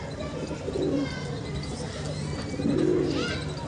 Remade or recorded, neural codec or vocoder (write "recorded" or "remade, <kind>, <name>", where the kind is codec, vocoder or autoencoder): recorded